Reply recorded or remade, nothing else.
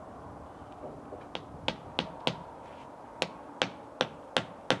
recorded